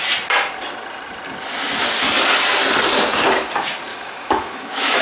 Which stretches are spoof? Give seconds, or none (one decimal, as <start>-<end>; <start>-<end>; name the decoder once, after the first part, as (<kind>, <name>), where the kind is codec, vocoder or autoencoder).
3.9-5.0 (autoencoder, DAC-VAE)